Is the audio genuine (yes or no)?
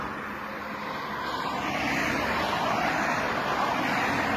yes